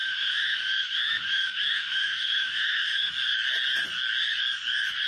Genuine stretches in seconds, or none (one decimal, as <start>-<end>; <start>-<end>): 3.1-5.1